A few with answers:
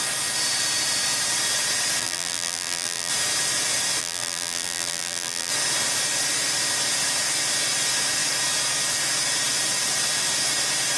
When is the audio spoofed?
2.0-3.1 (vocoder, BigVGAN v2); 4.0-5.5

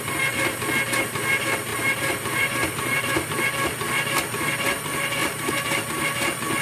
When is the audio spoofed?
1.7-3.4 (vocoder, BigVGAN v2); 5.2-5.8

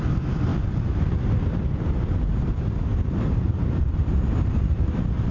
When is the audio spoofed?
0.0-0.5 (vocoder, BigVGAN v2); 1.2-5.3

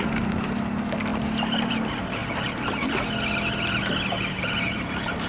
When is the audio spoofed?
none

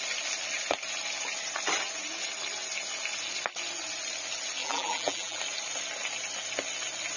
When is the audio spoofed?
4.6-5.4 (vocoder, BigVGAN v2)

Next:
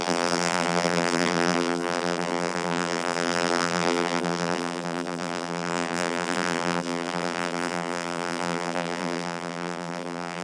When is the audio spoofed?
0.0-10.4 (vocoder, BigVGAN v2)

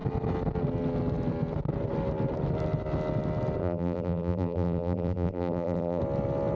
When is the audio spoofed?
3.6-6.0 (vocoder, BigVGAN v2)

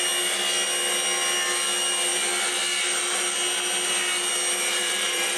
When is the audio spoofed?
4.7-5.4 (vocoder, BigVGAN v2)